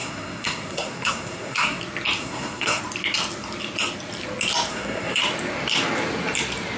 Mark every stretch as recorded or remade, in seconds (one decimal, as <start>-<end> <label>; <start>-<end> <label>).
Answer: 0.0-1.8 remade; 1.8-2.2 recorded; 2.2-2.8 remade; 2.8-4.7 recorded; 4.7-5.2 remade; 5.2-6.8 recorded